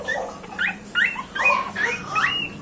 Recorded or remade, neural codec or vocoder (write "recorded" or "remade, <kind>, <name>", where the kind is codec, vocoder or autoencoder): recorded